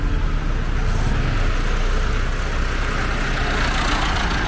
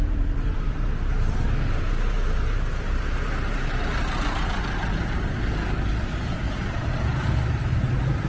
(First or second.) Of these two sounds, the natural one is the first